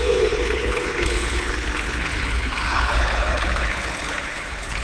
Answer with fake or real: fake